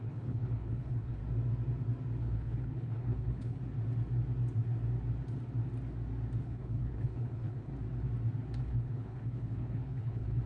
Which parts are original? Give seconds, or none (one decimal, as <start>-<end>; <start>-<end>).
1.2-2.2; 3.6-6.4; 7.7-8.6